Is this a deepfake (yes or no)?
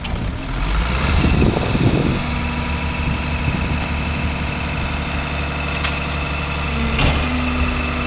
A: no